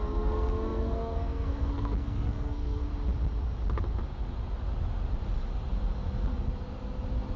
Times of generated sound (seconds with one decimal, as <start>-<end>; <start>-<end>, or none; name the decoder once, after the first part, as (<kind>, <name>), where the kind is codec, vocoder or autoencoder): 0.0-2.9 (codec, SNAC)

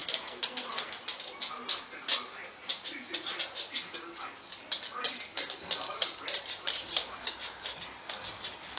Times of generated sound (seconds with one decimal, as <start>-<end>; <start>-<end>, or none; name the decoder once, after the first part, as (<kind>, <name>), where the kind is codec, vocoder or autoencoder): 0.0-1.0 (codec, SNAC)